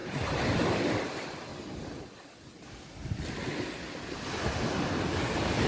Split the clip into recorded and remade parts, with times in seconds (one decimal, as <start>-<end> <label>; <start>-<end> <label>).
0.0-0.8 remade; 0.8-5.7 recorded